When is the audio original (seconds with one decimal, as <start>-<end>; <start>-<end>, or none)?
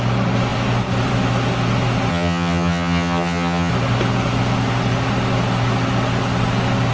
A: 0.0-2.1; 3.7-6.9